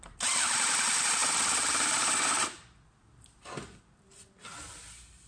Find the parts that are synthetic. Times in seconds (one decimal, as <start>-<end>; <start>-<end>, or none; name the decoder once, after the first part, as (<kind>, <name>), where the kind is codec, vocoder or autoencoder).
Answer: none